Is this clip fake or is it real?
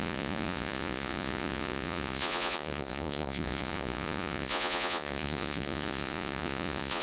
fake